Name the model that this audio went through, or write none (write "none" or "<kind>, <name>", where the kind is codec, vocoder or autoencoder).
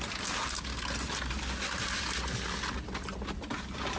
none